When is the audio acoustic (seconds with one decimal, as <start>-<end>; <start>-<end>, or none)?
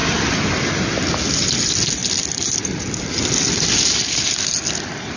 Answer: 0.0-5.2